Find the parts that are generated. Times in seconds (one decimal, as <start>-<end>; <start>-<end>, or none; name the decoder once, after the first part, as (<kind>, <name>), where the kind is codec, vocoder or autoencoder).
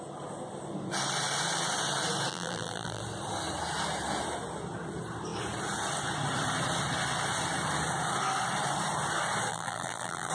2.3-3.0 (vocoder, BigVGAN v2); 9.5-10.3